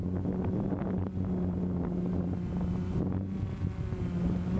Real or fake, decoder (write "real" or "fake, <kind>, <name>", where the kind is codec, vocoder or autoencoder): real